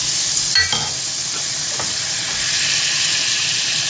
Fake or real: real